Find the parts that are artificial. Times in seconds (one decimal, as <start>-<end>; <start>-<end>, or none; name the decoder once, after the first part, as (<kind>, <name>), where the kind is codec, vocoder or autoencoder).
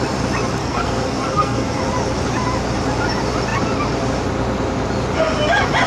0.6-1.8 (codec, SNAC)